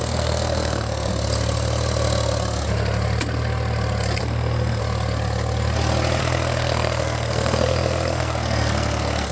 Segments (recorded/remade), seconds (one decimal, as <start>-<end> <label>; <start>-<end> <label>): 0.0-1.1 remade; 1.1-4.2 recorded; 4.2-4.8 remade; 4.8-6.2 recorded; 6.2-9.3 remade